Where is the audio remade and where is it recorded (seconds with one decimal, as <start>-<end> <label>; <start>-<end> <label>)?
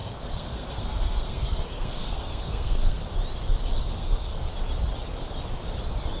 0.0-3.0 remade; 3.0-3.8 recorded; 3.8-4.5 remade; 4.5-6.2 recorded